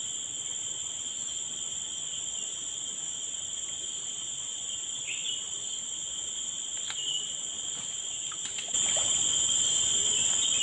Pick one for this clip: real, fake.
real